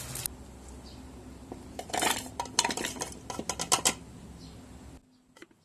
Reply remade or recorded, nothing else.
recorded